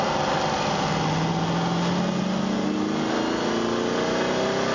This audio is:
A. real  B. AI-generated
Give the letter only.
A